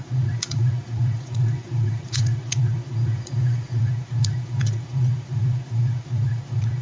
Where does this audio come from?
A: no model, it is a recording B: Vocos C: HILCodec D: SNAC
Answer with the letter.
B